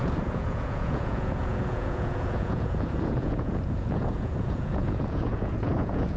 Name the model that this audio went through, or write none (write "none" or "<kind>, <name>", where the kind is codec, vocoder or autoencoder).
vocoder, Vocos